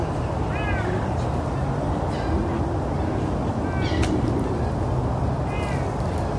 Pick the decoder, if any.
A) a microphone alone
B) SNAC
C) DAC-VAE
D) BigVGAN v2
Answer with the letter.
A